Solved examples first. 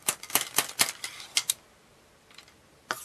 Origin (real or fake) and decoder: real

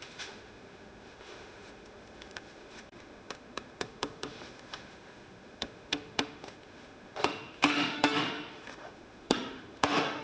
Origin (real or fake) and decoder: fake, autoencoder, DAC-VAE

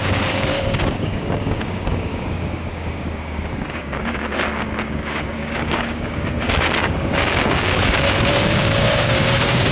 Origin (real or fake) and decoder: fake, codec, DAC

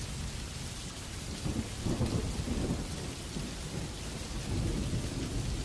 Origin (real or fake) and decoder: real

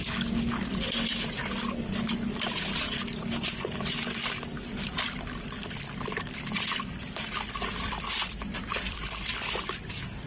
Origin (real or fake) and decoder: fake, vocoder, BigVGAN v2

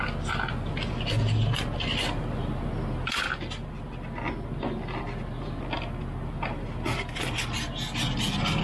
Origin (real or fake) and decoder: real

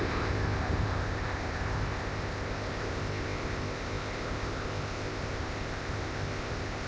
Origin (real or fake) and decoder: fake, codec, ZipCodec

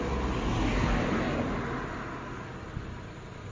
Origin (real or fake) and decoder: real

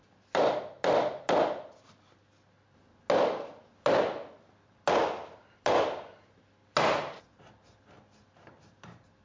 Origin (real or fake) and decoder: real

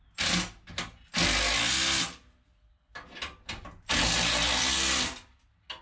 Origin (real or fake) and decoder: real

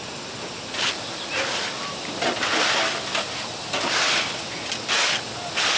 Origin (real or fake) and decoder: real